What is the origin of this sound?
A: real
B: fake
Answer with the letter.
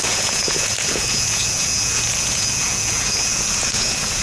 B